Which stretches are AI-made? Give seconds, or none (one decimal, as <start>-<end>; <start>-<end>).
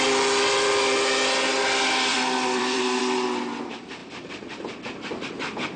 2.1-3.0; 4.0-4.7